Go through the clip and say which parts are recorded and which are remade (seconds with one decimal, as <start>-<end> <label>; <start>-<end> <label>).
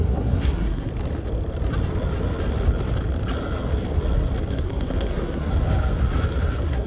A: 0.0-0.9 remade; 0.9-4.5 recorded; 4.5-5.5 remade; 5.5-6.4 recorded; 6.4-6.9 remade